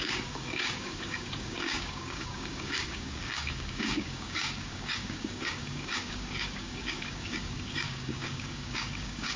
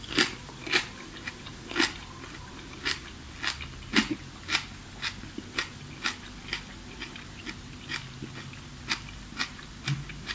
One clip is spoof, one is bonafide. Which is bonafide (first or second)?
second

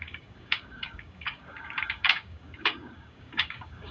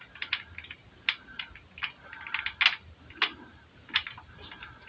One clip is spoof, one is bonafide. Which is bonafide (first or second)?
second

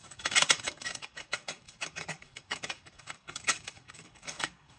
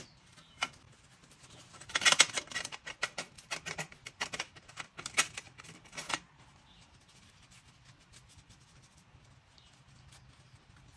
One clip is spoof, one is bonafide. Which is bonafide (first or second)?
second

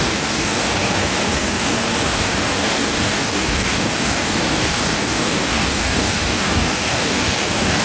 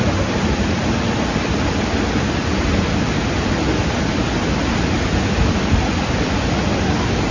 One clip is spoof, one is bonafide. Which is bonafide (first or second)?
second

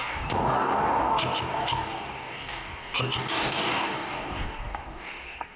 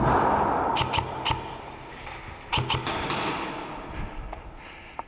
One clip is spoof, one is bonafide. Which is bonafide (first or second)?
second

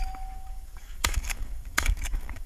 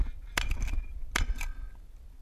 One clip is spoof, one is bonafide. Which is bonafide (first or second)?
second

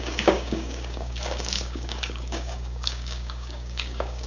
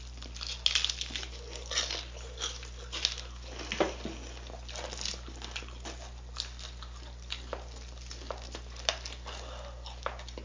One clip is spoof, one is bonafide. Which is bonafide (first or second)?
second